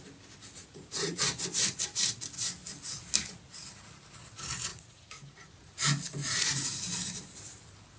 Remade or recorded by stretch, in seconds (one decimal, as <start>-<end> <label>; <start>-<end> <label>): 0.0-0.6 recorded; 0.6-1.2 remade; 1.2-4.7 recorded; 4.7-5.5 remade; 5.5-6.2 recorded; 6.2-6.8 remade; 6.8-8.0 recorded

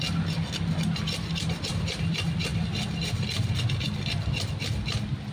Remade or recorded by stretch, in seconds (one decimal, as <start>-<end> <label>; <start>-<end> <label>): 0.0-5.3 recorded

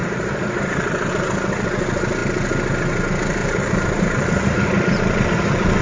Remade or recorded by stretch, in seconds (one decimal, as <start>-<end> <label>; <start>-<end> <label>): 0.0-1.1 remade; 1.1-3.4 recorded; 3.4-5.8 remade

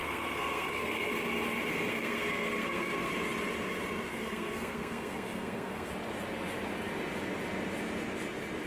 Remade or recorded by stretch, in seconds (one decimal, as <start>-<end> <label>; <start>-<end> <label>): 0.0-1.1 remade; 1.1-1.7 recorded; 1.7-3.1 remade; 3.1-4.1 recorded; 4.1-5.9 remade; 5.9-8.7 recorded

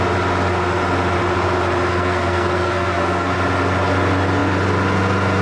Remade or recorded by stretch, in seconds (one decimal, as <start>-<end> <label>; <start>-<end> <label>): 0.0-1.9 recorded; 1.9-3.3 remade; 3.3-5.4 recorded

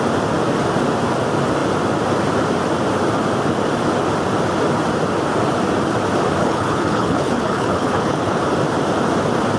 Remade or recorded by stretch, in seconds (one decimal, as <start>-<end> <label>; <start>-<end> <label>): 0.0-6.4 recorded; 6.4-8.4 remade; 8.4-9.6 recorded

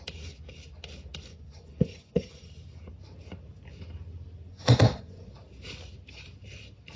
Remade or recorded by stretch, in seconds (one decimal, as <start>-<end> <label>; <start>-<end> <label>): 0.0-1.3 recorded; 1.3-2.5 remade; 2.5-4.5 recorded; 4.5-5.3 remade; 5.3-7.0 recorded

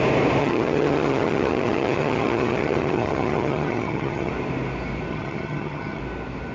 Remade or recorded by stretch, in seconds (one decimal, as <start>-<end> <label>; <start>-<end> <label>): 0.0-0.4 recorded; 0.4-4.3 remade; 4.3-5.1 recorded; 5.1-6.0 remade; 6.0-6.5 recorded